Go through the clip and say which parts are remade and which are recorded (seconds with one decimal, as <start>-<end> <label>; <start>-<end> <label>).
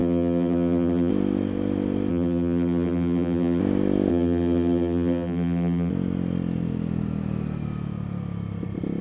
0.0-1.1 remade; 1.1-2.1 recorded; 2.1-3.6 remade; 3.6-4.1 recorded; 4.1-5.9 remade; 5.9-9.0 recorded